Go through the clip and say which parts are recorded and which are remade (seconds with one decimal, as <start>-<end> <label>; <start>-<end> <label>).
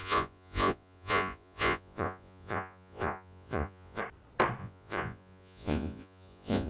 0.0-4.0 remade; 4.0-4.6 recorded; 4.6-6.7 remade